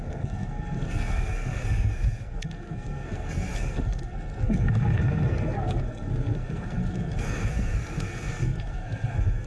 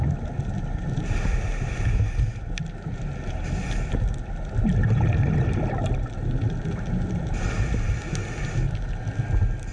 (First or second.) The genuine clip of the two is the second